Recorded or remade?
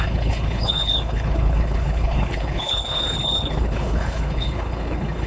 remade